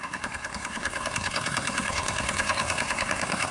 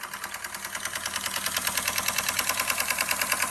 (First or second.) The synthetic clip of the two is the first